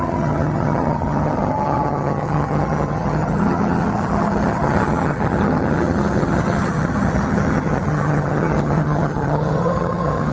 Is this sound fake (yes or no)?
yes